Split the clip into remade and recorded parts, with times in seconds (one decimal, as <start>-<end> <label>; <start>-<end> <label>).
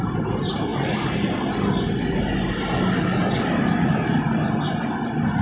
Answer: 0.0-5.4 recorded